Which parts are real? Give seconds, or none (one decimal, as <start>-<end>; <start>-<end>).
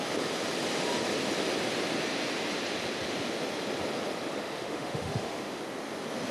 0.0-4.3; 5.6-6.3